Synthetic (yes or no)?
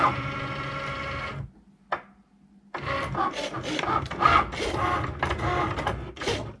no